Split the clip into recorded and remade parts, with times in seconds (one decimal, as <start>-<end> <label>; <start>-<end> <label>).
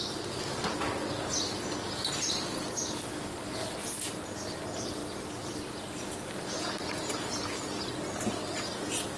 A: 0.0-9.2 recorded